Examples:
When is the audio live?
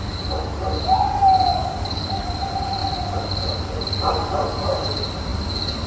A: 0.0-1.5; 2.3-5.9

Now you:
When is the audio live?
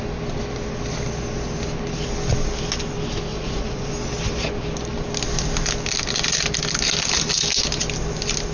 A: 0.0-3.3; 3.9-8.5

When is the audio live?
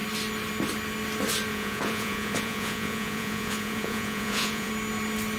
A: 0.0-1.5; 4.7-5.4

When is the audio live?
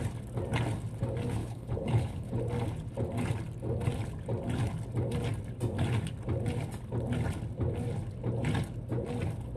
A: 0.0-1.4; 2.3-9.6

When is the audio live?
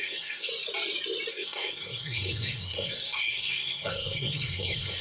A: 0.5-1.3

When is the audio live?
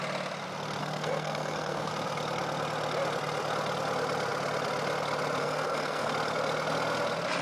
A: 0.0-0.8; 1.9-5.4; 6.1-7.4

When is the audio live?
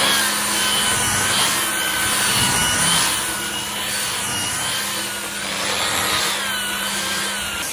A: 0.0-7.7